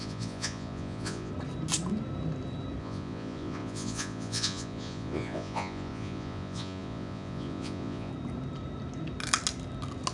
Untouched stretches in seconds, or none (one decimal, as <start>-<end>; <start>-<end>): 1.3-2.8; 8.1-10.1